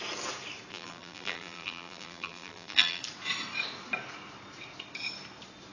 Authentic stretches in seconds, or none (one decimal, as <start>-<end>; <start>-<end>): 0.0-0.7; 3.0-5.7